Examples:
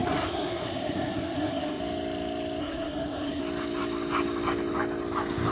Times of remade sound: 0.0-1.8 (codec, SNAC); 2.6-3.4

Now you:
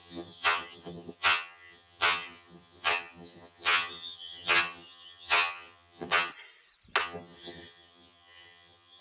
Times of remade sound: 0.0-6.3 (vocoder, HiFi-GAN); 7.0-9.0

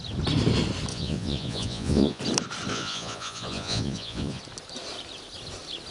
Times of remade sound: 0.9-2.2 (vocoder, Vocos); 2.7-4.4